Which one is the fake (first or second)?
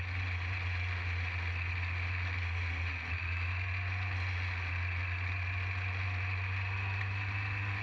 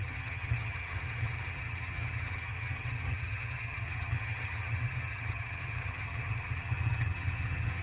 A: second